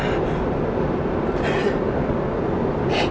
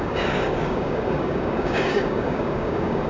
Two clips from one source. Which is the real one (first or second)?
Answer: first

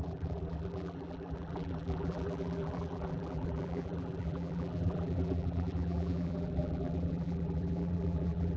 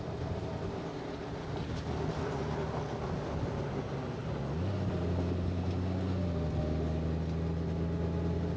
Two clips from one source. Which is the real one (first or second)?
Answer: second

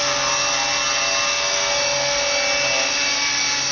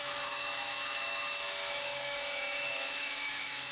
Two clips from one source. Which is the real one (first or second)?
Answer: first